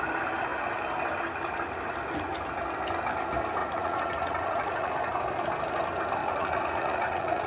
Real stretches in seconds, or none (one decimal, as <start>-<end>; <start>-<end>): 0.0-3.6; 4.9-6.2